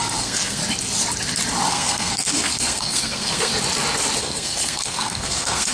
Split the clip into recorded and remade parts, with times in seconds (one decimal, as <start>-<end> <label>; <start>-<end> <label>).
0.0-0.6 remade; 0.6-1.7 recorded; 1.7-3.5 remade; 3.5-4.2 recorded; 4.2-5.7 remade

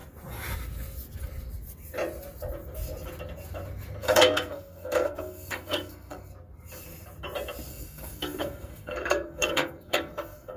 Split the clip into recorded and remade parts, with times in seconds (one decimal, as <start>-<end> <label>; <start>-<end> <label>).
0.0-4.0 recorded; 4.0-6.3 remade; 6.3-7.7 recorded; 7.7-10.6 remade

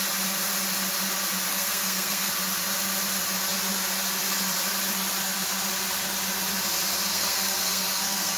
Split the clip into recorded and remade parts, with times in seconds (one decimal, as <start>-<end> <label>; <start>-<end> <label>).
0.0-1.5 recorded; 1.5-2.3 remade; 2.3-7.1 recorded; 7.1-8.4 remade

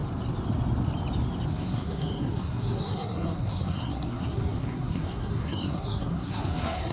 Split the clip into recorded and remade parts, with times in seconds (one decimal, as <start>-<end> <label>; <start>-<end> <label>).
0.0-1.5 recorded; 1.5-6.9 remade

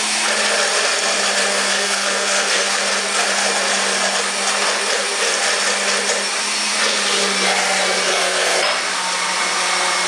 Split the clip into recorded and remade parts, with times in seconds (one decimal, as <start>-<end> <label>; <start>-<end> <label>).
0.0-1.5 recorded; 1.5-2.8 remade; 2.8-8.1 recorded; 8.1-8.6 remade; 8.6-10.1 recorded

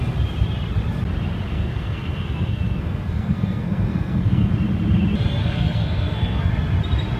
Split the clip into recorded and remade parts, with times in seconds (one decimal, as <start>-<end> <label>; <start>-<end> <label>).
0.0-1.5 recorded; 1.5-4.5 remade; 4.5-5.4 recorded; 5.4-6.5 remade; 6.5-7.2 recorded